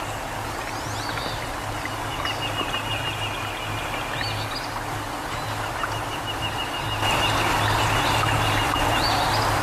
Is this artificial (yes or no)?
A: no